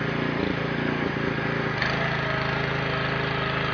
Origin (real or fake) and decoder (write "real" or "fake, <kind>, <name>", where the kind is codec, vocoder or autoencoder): real